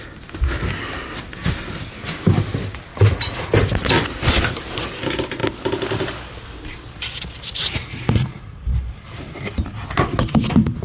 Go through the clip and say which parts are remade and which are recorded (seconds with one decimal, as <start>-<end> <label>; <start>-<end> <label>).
0.0-2.9 recorded; 2.9-3.5 remade; 3.5-7.8 recorded; 7.8-8.6 remade; 8.6-10.8 recorded